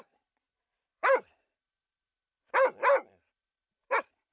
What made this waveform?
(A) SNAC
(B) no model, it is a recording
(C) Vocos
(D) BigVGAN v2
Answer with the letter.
D